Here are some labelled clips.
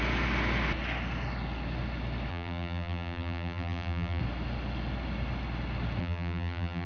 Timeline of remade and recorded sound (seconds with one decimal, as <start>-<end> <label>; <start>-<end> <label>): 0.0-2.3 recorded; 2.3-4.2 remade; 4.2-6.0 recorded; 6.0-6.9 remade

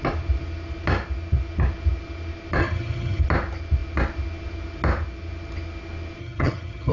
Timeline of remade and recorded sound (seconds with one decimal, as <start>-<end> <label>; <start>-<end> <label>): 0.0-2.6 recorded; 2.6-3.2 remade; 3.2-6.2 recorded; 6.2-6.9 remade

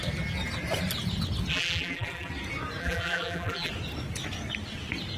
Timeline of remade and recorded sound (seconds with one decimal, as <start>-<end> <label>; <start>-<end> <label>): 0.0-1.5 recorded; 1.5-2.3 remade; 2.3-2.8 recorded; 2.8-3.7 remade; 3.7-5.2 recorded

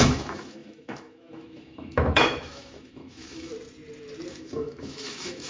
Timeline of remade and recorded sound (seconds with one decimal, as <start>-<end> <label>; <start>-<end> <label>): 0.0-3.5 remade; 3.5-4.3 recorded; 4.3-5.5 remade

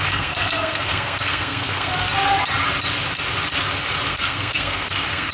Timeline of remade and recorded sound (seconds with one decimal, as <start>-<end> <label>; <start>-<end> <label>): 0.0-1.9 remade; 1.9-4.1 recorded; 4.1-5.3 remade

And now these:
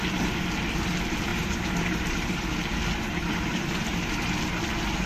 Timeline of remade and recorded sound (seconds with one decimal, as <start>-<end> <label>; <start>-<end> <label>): 0.0-1.3 recorded; 1.3-4.4 remade; 4.4-5.1 recorded

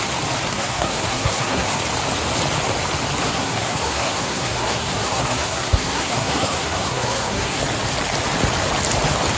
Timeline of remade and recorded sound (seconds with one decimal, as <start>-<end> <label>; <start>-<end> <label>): 0.0-0.5 recorded; 0.5-1.8 remade; 1.8-3.2 recorded; 3.2-7.6 remade; 7.6-9.4 recorded

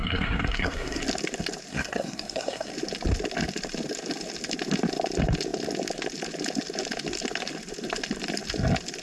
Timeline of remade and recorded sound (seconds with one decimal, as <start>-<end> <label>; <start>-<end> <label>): 0.0-1.0 remade; 1.0-1.7 recorded; 1.7-2.7 remade; 2.7-9.0 recorded